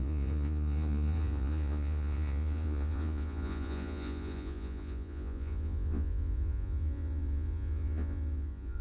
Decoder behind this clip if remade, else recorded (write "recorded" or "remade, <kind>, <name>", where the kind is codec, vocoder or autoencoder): remade, vocoder, Vocos